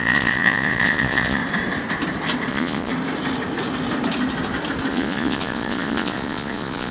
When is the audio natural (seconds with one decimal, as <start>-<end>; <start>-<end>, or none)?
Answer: 1.4-2.5; 2.9-4.9